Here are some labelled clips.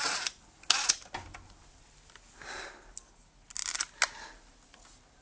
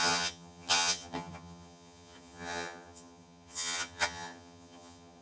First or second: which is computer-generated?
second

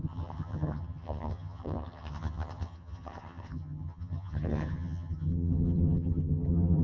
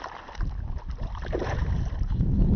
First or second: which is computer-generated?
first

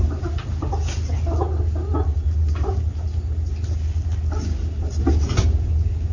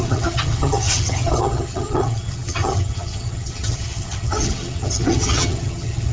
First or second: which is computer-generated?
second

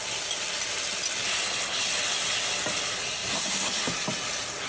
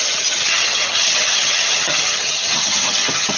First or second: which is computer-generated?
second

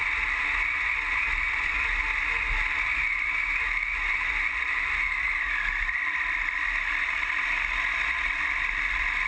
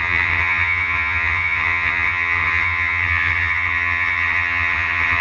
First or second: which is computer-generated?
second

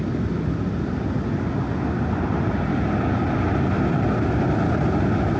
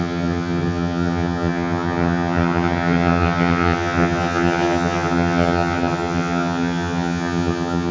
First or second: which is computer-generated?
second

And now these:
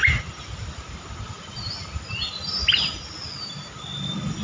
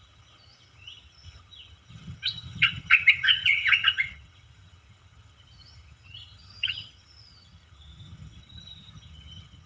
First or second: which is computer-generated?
second